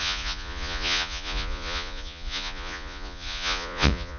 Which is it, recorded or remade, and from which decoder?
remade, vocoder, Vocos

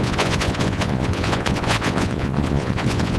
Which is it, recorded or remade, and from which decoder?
remade, vocoder, Vocos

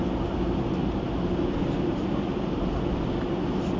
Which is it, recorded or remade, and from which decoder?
recorded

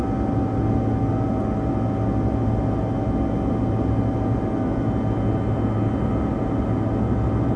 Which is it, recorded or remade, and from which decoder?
recorded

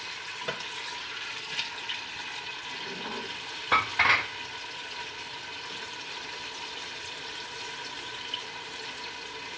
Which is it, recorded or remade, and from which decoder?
recorded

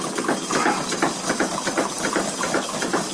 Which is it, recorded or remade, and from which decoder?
recorded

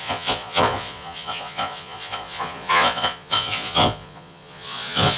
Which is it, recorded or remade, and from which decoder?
remade, vocoder, Vocos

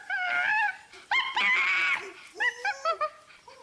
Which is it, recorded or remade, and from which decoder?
recorded